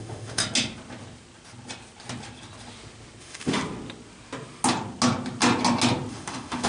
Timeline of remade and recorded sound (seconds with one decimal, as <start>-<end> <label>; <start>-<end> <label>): 0.0-0.4 remade; 0.4-3.2 recorded; 3.2-3.6 remade; 3.6-6.1 recorded; 6.1-6.7 remade